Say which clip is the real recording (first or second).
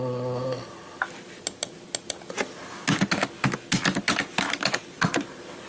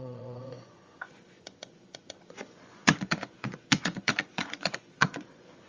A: first